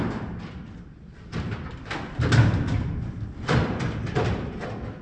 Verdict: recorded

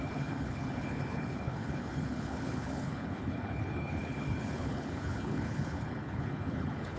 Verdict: remade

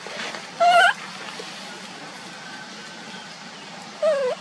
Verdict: recorded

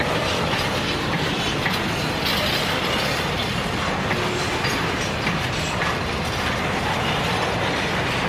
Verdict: recorded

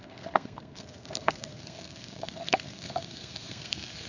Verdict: remade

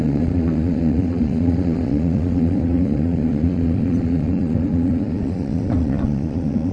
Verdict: remade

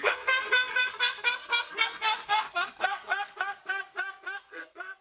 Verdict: remade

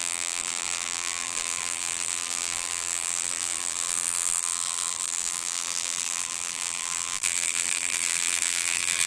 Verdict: remade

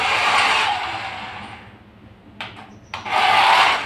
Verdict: recorded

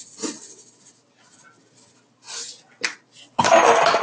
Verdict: recorded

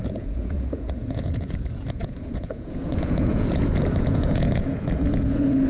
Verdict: remade